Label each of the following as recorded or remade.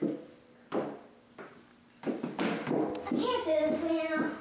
recorded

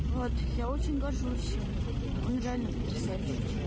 recorded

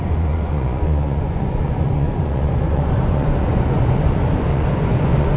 remade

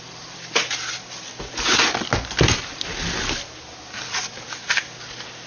recorded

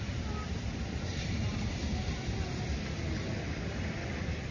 recorded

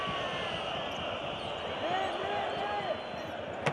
recorded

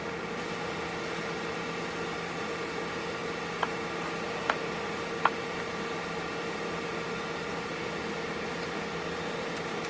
recorded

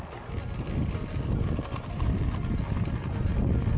recorded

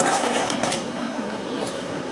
remade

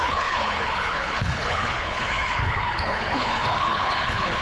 remade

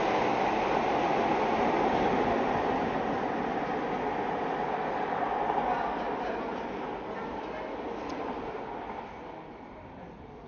recorded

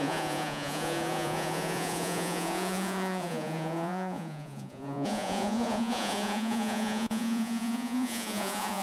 remade